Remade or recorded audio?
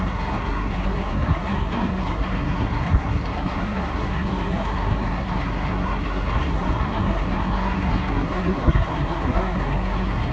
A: remade